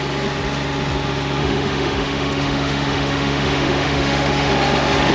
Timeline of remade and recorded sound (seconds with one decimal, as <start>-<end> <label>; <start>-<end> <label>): 0.0-1.4 recorded; 1.4-4.5 remade; 4.5-5.1 recorded